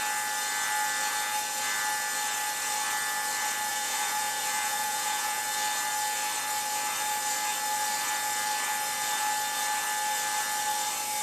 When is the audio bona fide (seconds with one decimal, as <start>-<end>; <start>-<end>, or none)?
0.0-3.7; 5.4-11.2